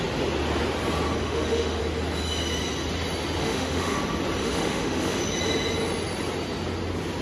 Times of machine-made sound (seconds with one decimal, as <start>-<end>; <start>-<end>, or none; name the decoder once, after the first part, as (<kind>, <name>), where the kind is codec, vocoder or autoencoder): 1.2-1.8 (autoencoder, DAC-VAE); 3.4-4.0; 4.4-5.2